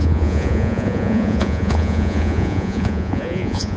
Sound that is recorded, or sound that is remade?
remade